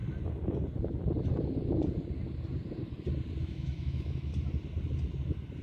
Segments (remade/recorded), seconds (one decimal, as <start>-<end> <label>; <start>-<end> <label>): 0.0-3.4 recorded; 3.4-4.3 remade; 4.3-5.6 recorded